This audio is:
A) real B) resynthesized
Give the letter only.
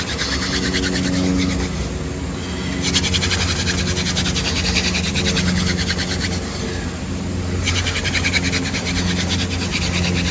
A